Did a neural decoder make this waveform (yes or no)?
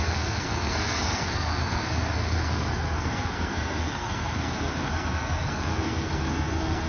yes